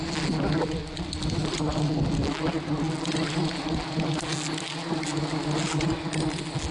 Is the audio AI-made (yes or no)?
no